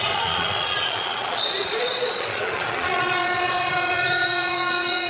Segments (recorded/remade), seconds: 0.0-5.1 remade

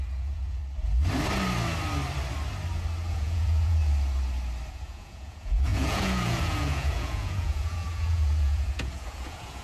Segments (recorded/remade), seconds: 0.0-0.6 remade; 0.6-3.1 recorded; 3.1-3.8 remade; 3.8-4.7 recorded; 4.7-9.6 remade

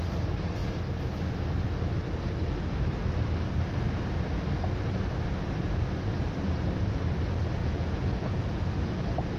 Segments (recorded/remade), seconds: 0.0-7.6 recorded; 7.6-8.9 remade; 8.9-9.4 recorded

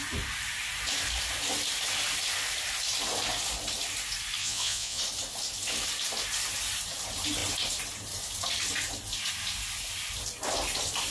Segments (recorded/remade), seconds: 0.0-4.4 recorded; 4.4-5.0 remade; 5.0-11.1 recorded